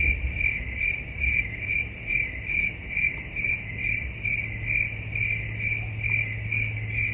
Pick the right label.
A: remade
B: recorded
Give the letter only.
B